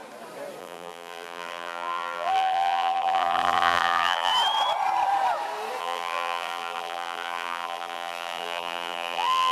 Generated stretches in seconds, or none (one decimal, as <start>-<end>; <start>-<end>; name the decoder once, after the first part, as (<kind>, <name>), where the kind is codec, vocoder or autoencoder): 0.6-4.3 (vocoder, BigVGAN v2); 5.8-9.5